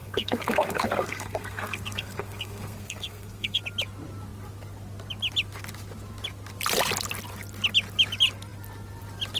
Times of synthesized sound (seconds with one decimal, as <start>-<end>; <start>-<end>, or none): 0.0-3.6